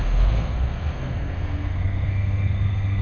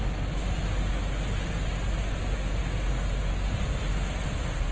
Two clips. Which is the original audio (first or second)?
second